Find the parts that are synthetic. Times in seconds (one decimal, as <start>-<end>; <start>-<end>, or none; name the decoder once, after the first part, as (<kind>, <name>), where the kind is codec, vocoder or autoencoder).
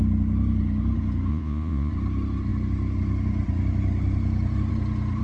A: 1.3-1.9 (vocoder, Vocos)